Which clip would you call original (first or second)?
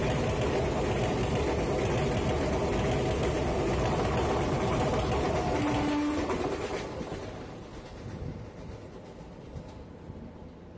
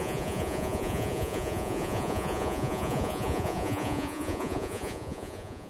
first